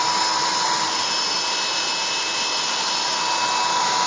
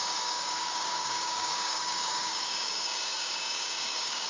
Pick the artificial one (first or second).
second